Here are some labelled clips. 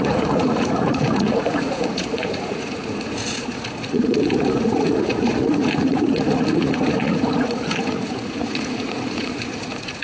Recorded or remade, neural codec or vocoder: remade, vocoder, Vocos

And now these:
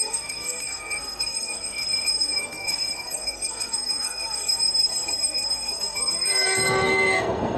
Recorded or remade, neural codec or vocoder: remade, codec, SNAC